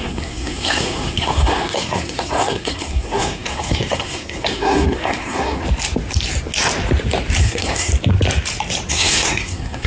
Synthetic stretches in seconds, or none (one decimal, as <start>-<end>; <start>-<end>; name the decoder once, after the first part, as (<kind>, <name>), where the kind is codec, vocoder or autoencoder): 0.0-5.6 (codec, SNAC); 7.4-7.9; 8.9-9.9